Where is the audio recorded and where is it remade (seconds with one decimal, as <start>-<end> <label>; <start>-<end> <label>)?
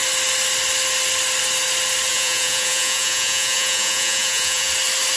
0.0-2.1 recorded; 2.1-4.7 remade; 4.7-5.2 recorded